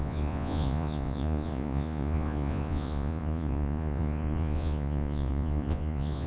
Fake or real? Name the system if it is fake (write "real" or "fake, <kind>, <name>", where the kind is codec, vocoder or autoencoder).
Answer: fake, vocoder, Vocos